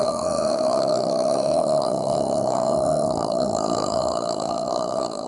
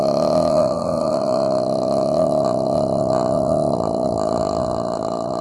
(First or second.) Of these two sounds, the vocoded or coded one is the first